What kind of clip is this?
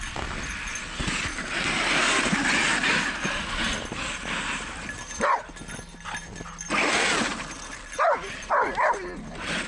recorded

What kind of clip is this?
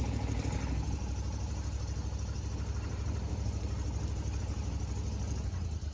recorded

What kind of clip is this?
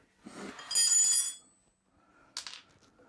recorded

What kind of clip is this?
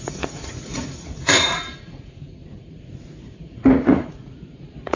remade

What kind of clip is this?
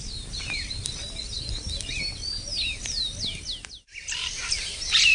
remade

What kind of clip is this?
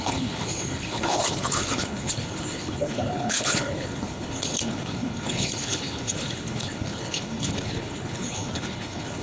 remade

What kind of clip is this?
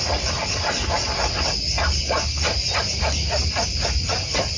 recorded